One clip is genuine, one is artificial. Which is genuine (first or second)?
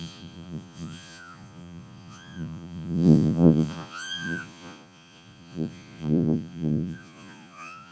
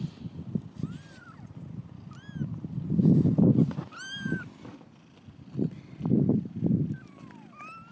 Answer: second